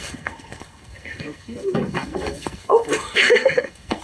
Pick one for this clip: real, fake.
fake